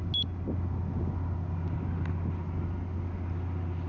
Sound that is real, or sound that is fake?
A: real